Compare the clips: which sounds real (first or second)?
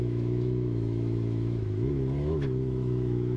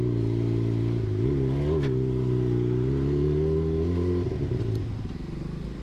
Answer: second